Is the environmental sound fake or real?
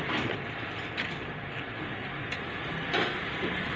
real